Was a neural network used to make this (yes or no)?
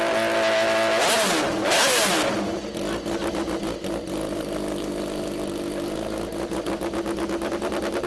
no